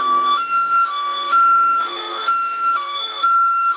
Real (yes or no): no